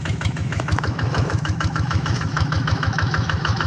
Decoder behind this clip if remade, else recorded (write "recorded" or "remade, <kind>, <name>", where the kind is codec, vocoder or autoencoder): remade, autoencoder, DAC-VAE